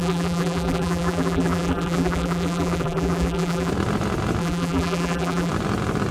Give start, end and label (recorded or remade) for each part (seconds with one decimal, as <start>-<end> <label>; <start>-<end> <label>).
0.0-3.7 remade; 3.7-4.4 recorded; 4.4-5.5 remade; 5.5-6.1 recorded